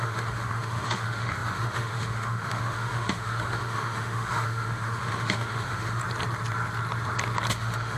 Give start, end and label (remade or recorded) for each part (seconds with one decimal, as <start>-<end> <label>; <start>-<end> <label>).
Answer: 0.0-6.0 remade; 6.0-7.5 recorded; 7.5-8.0 remade

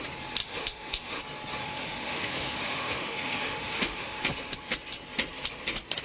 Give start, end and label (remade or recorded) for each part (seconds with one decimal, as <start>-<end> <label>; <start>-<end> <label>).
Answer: 0.0-0.4 recorded; 0.4-1.2 remade; 1.2-1.6 recorded; 1.6-4.2 remade; 4.2-6.0 recorded